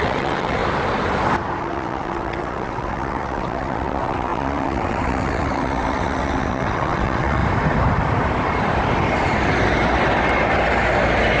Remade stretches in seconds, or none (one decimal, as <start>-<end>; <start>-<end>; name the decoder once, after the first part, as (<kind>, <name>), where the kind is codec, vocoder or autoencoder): 0.0-0.6 (vocoder, WaveNeXt); 1.6-7.4